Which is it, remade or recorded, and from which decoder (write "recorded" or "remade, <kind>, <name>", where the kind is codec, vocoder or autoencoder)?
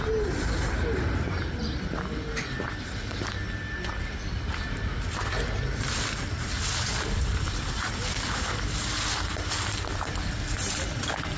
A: recorded